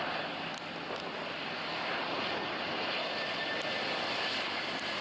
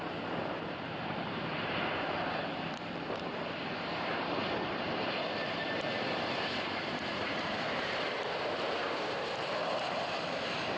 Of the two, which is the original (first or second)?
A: first